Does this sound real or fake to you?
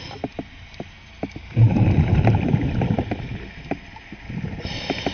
real